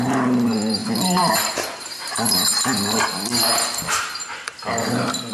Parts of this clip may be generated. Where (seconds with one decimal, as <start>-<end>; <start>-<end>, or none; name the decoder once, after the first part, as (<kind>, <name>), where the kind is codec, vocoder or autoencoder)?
0.0-2.5 (vocoder, BigVGAN v2); 3.9-5.3